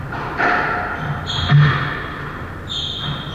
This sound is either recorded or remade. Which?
recorded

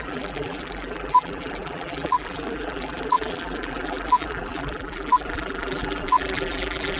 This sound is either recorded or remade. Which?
remade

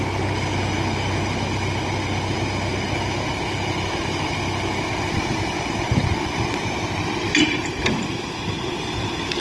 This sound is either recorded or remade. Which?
recorded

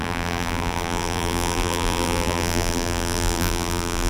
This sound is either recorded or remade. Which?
remade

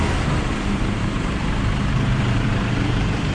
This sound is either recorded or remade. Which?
remade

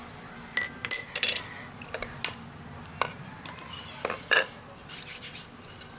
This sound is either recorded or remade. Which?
recorded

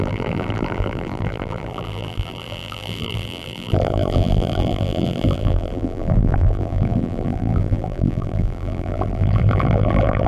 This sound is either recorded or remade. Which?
remade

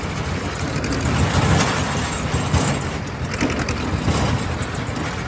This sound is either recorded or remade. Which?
recorded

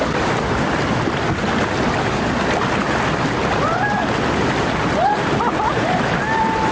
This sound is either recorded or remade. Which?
recorded